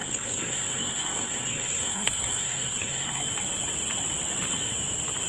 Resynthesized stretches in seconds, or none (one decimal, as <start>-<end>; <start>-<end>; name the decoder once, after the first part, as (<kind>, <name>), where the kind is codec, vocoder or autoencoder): 0.0-3.2 (codec, SNAC)